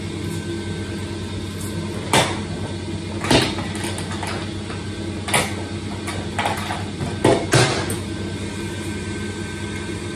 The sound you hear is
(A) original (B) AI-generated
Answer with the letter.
A